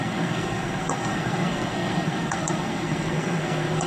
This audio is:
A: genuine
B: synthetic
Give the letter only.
B